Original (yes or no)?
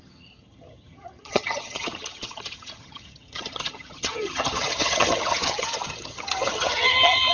no